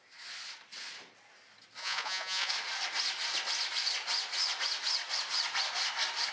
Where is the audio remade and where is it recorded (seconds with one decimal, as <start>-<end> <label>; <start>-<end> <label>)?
0.0-1.8 recorded; 1.8-2.5 remade; 2.5-6.3 recorded